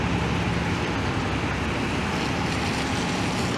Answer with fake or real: real